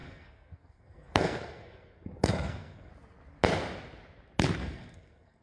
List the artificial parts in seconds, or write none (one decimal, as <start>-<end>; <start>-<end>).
0.0-2.9; 4.6-5.4